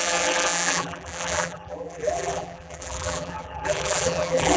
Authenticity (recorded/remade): remade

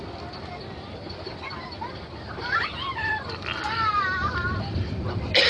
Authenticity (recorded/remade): recorded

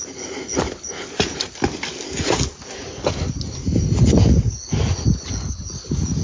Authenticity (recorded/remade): recorded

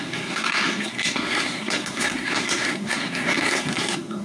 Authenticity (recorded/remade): remade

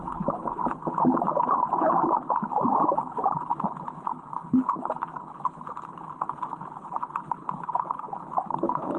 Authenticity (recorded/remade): remade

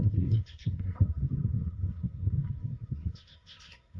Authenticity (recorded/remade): remade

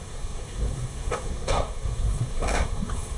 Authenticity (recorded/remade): remade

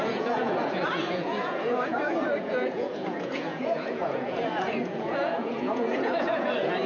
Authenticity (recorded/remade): remade